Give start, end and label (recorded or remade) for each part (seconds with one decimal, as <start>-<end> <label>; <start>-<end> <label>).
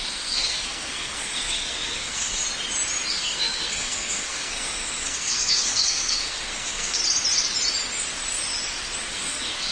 0.0-2.4 remade; 2.4-3.1 recorded; 3.1-7.0 remade; 7.0-9.1 recorded; 9.1-9.7 remade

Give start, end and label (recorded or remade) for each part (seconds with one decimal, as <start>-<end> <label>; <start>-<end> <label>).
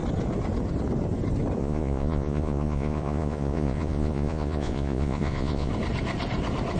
0.0-1.6 recorded; 1.6-5.7 remade; 5.7-6.8 recorded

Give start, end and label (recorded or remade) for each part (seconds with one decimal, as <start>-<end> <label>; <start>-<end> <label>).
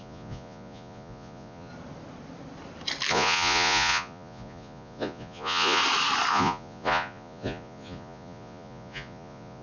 0.0-1.7 remade; 1.7-3.1 recorded; 3.1-5.8 remade; 5.8-6.3 recorded; 6.3-9.6 remade